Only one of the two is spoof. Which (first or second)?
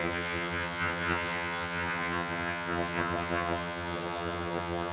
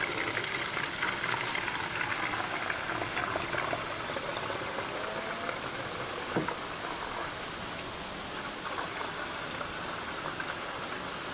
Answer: first